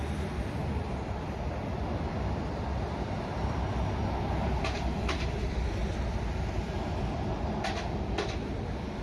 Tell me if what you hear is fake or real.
real